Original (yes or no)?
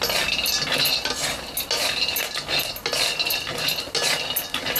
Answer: yes